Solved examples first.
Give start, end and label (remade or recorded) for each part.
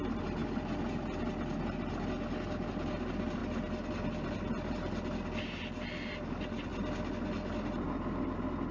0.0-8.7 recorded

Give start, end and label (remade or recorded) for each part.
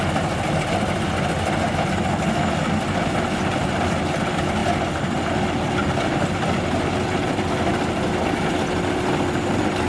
0.0-9.9 recorded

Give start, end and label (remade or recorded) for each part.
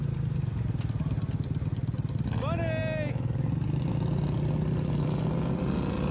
0.0-6.1 recorded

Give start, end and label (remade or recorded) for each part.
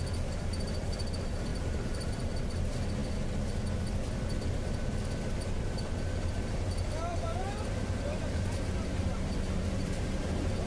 0.0-1.5 recorded; 1.5-2.1 remade; 2.1-7.1 recorded; 7.1-10.1 remade; 10.1-10.7 recorded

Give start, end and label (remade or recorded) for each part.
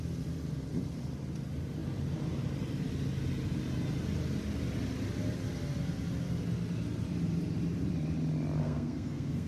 0.0-8.6 recorded; 8.6-9.5 remade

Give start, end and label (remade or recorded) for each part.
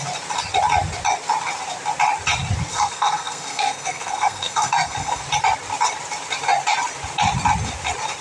0.0-2.7 recorded; 2.7-5.2 remade; 5.2-8.2 recorded